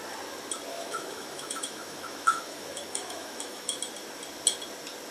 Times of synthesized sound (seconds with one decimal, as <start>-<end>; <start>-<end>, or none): 0.7-3.8